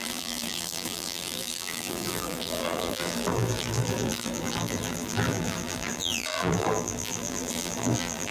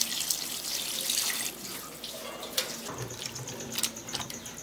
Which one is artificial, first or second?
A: first